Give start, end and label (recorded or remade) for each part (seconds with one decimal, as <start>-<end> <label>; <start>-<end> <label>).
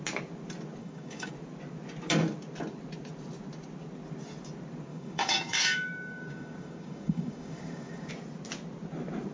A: 0.0-0.8 recorded; 0.8-1.3 remade; 1.3-4.9 recorded; 4.9-8.1 remade; 8.1-9.3 recorded